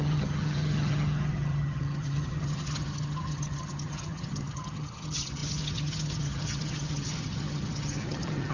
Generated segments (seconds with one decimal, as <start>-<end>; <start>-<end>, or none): 0.0-8.5